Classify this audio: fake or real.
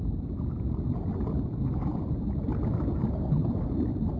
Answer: real